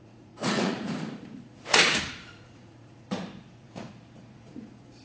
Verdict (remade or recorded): remade